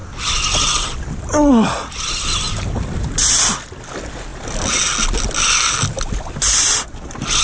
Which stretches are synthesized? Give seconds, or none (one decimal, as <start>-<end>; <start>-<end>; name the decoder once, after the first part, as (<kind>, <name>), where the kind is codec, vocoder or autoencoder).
none